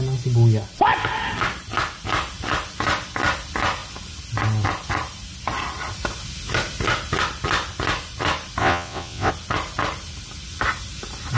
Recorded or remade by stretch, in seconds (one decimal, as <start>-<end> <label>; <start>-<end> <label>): 0.0-8.6 recorded; 8.6-9.3 remade; 9.3-11.4 recorded